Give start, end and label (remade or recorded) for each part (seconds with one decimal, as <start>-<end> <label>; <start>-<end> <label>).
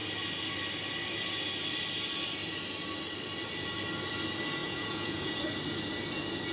0.0-4.6 recorded; 4.6-5.4 remade; 5.4-6.5 recorded